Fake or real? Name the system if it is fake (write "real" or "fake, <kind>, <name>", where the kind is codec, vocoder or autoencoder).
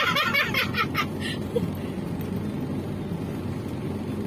real